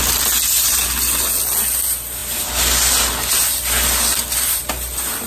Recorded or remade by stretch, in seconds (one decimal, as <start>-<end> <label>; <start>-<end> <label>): 0.0-5.3 recorded